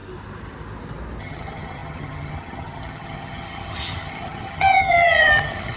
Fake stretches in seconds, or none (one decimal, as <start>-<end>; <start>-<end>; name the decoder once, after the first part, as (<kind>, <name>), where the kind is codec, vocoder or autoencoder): 1.2-5.8 (vocoder, HiFi-GAN)